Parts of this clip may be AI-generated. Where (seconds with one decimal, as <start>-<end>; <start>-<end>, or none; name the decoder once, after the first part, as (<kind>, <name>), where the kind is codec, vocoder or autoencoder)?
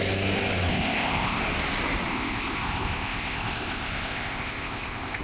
0.7-1.4 (codec, ZipCodec); 2.1-5.2